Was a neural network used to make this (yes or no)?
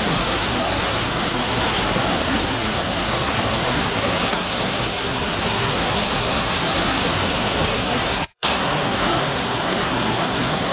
yes